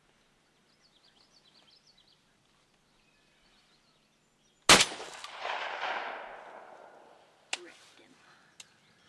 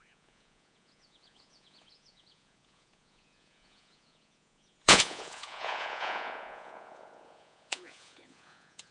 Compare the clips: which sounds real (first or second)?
first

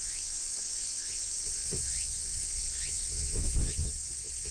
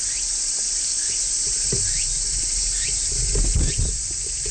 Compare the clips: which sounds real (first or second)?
second